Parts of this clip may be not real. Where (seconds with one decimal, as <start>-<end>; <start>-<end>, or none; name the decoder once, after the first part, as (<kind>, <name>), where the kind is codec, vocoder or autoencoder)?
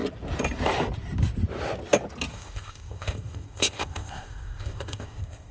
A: 2.3-5.5 (codec, ZipCodec)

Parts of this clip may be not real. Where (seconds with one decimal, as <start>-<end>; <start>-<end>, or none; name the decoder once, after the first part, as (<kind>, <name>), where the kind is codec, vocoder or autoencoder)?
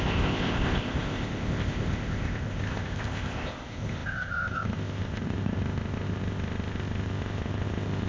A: 0.0-8.1 (codec, ZipCodec)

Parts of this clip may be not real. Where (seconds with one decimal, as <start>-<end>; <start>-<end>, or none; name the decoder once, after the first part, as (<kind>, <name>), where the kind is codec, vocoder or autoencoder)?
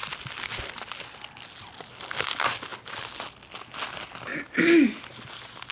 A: none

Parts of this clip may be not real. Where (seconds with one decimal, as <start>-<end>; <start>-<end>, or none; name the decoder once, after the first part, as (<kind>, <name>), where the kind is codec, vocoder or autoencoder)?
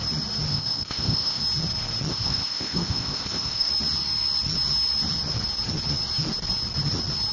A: 0.5-1.4 (codec, ZipCodec); 2.1-3.7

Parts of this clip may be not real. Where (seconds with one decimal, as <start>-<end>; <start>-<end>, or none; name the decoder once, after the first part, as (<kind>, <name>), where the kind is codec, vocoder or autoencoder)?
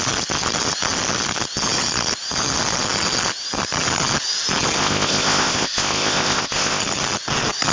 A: 4.8-6.8 (codec, ZipCodec)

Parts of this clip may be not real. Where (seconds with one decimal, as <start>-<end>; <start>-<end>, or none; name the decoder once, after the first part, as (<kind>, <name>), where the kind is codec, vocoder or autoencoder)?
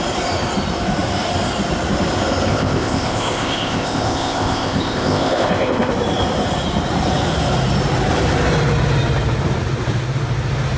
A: 2.5-5.9 (codec, ZipCodec)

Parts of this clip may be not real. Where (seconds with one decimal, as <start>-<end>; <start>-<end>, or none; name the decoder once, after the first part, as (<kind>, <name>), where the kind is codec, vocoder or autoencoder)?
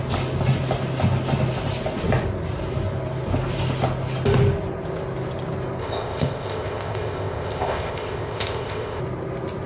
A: 5.8-9.0 (codec, ZipCodec)